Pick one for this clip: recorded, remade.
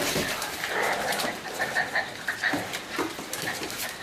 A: recorded